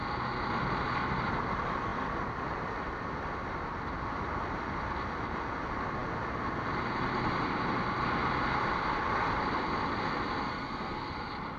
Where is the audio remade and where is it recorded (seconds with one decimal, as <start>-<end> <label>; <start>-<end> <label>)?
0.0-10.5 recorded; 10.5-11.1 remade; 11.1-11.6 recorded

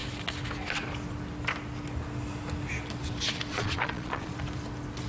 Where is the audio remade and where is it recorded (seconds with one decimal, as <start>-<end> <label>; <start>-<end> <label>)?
0.0-3.5 recorded; 3.5-4.4 remade; 4.4-5.1 recorded

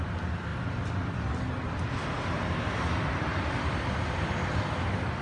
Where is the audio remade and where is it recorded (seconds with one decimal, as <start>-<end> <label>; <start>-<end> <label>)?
0.0-5.2 recorded

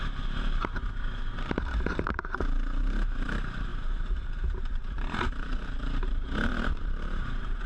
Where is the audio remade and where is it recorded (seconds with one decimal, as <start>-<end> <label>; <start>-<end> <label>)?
0.0-7.7 remade